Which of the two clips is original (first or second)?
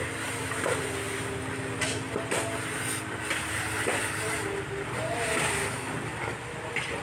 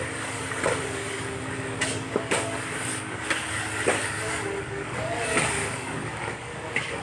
first